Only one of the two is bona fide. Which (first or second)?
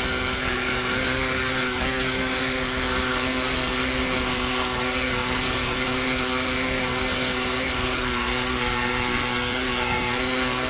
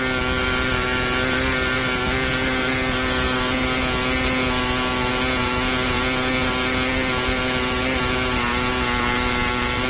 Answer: second